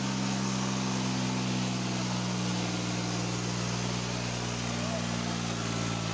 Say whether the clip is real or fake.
real